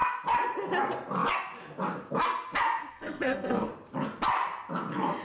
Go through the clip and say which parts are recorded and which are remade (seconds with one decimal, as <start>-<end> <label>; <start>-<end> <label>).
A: 0.0-2.9 recorded; 2.9-3.7 remade; 3.7-5.2 recorded